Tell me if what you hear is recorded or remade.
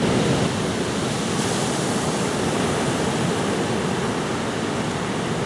recorded